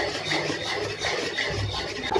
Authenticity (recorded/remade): recorded